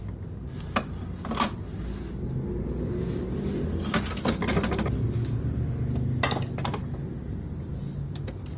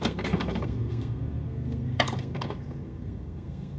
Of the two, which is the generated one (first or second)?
second